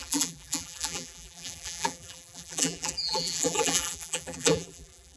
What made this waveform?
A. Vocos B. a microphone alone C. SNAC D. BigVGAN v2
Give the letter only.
D